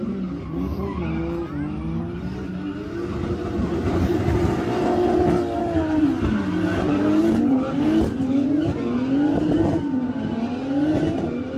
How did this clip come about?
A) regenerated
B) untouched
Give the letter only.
B